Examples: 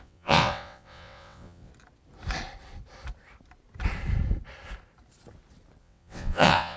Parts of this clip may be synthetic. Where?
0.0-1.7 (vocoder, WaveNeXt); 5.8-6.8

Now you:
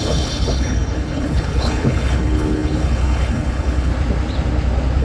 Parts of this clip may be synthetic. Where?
0.0-3.9 (codec, HILCodec)